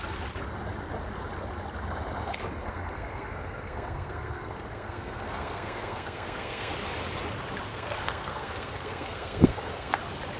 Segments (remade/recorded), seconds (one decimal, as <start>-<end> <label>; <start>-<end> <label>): 0.0-2.6 recorded; 2.6-6.7 remade; 6.7-7.7 recorded; 7.7-10.0 remade; 10.0-10.4 recorded